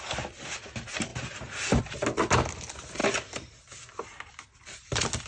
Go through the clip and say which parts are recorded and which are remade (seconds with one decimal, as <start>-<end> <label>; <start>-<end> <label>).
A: 0.0-1.1 recorded; 1.1-1.8 remade; 1.8-5.3 recorded